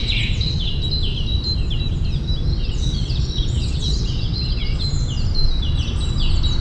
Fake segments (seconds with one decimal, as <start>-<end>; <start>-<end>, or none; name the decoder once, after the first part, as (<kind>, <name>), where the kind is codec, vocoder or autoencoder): 0.0-0.7 (vocoder, WaveNeXt); 2.5-4.8